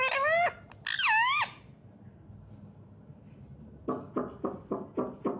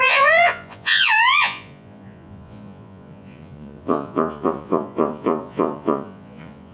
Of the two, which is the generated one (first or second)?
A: second